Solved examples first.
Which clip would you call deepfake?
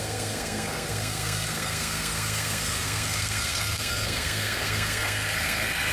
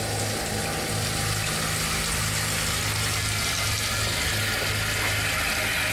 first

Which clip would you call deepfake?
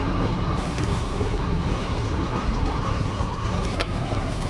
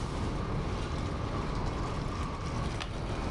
first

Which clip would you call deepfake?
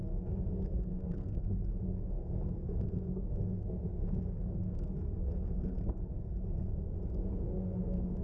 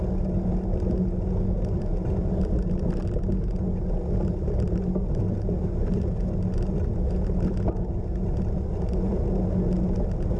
first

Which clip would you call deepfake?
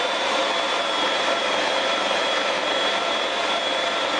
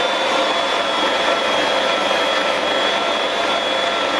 first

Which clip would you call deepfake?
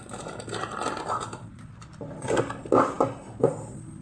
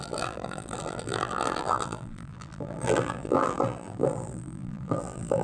second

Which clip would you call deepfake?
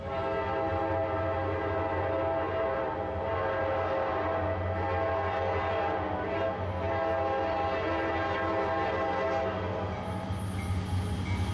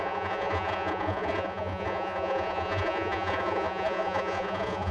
second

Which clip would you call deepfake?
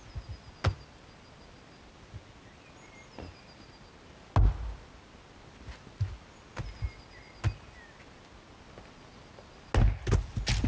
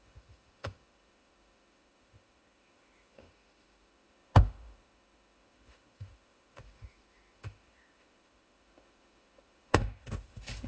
second